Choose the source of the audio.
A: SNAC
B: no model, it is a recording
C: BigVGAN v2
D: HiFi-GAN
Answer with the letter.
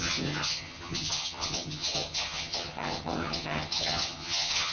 D